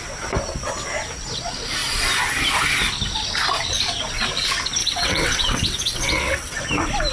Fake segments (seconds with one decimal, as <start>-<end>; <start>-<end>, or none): 4.8-6.6